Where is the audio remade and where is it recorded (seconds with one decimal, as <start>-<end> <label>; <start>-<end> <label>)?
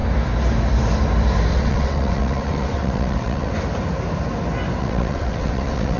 0.0-1.5 recorded; 1.5-3.5 remade; 3.5-4.8 recorded; 4.8-6.0 remade